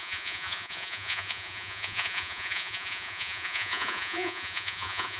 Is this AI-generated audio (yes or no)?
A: yes